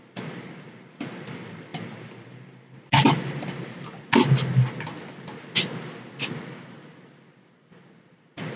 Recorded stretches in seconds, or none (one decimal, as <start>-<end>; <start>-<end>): 0.0-8.6